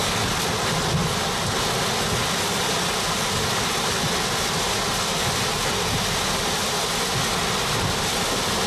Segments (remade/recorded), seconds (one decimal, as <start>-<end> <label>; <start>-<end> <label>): 0.0-8.7 recorded